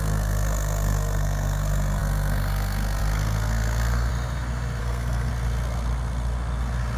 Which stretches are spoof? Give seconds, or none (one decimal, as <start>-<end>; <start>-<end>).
0.0-4.1; 4.8-5.3